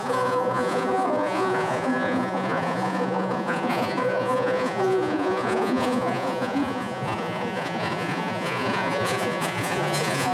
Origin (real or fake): fake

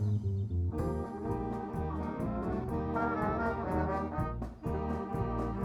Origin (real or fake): real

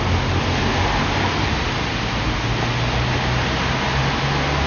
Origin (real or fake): real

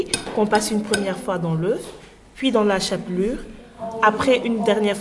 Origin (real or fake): real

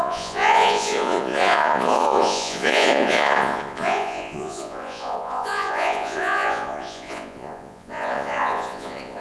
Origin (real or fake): fake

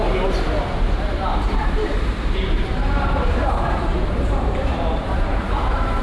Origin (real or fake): fake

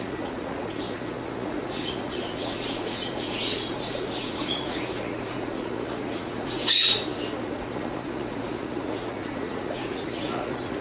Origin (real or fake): fake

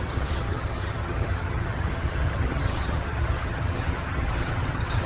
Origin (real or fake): fake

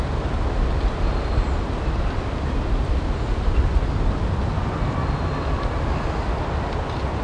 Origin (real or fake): real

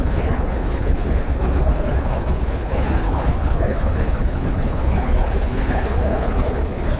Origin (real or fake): fake